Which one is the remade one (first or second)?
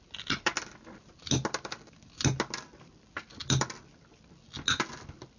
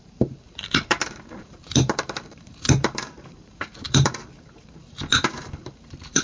second